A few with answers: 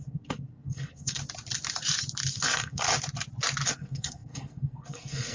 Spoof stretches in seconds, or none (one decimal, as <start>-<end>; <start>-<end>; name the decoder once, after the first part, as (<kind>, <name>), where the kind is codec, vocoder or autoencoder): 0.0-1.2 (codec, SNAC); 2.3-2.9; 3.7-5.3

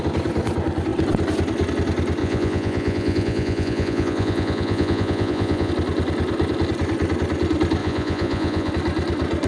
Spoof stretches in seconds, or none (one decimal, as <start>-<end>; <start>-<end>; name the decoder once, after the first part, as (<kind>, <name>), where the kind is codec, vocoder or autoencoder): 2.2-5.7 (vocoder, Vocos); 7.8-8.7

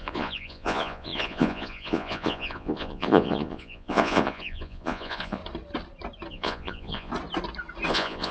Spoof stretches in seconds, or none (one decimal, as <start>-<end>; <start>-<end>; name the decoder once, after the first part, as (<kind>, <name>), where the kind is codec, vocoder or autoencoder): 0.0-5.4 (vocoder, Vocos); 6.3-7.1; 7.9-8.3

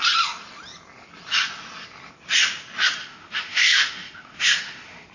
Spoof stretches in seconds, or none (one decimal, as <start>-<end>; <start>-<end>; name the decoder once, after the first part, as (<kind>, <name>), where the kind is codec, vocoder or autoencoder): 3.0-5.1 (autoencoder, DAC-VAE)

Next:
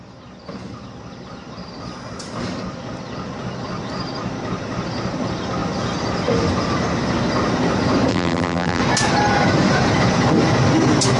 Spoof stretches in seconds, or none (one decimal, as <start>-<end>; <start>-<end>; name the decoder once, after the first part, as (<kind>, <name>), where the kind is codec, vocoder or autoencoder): 8.1-8.8 (vocoder, BigVGAN v2)